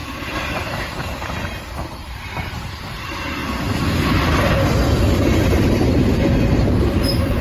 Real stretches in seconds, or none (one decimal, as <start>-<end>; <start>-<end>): 0.0-1.9; 3.4-5.0